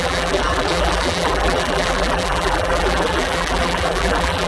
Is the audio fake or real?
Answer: fake